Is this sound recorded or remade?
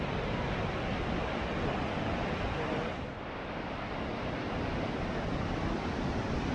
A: recorded